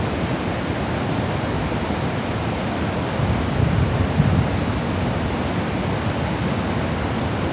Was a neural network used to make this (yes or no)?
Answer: no